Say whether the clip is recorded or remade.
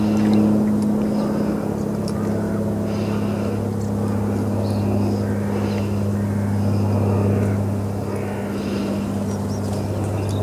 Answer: recorded